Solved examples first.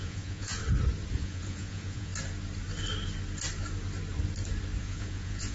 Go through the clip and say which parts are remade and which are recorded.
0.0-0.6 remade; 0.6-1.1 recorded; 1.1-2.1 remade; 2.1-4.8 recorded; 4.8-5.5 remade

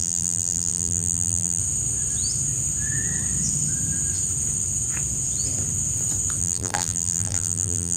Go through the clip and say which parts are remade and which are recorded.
0.0-1.6 remade; 1.6-6.4 recorded; 6.4-8.0 remade

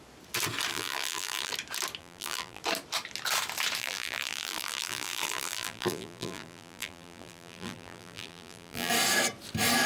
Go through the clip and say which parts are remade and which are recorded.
0.0-0.7 recorded; 0.7-1.5 remade; 1.5-2.0 recorded; 2.0-2.6 remade; 2.6-3.8 recorded; 3.8-8.9 remade; 8.9-9.9 recorded